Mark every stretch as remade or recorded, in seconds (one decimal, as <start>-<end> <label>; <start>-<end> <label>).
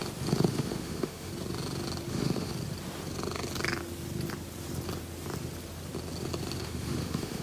0.0-0.5 recorded; 0.5-1.3 remade; 1.3-2.1 recorded; 2.1-2.5 remade; 2.5-6.6 recorded; 6.6-7.4 remade